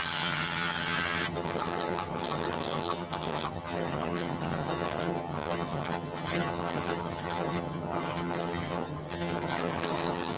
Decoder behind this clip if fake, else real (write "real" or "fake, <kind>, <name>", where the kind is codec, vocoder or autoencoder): fake, vocoder, HiFi-GAN